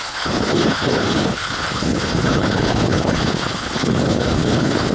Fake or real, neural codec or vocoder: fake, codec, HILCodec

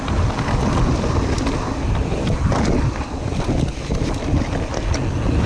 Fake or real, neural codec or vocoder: real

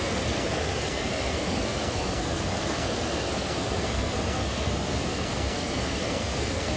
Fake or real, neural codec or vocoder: fake, codec, SNAC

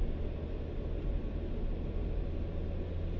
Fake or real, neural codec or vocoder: real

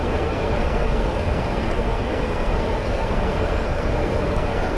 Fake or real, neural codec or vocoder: fake, codec, SNAC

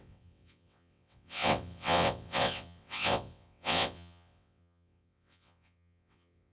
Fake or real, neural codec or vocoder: fake, vocoder, WaveNeXt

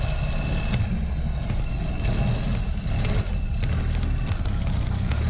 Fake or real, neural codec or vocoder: real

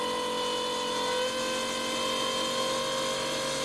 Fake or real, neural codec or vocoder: real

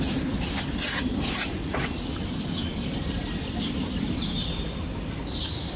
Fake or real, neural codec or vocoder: real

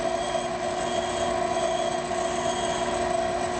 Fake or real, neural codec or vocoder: real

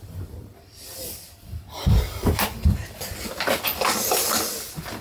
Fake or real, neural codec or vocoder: fake, vocoder, BigVGAN v2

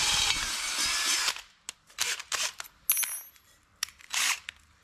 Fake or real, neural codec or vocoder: real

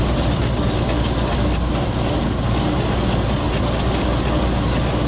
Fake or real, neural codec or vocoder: real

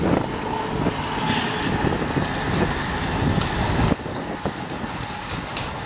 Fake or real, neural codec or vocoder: real